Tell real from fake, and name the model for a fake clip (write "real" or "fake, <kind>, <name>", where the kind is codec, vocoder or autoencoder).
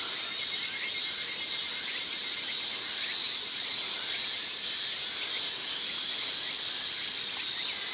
real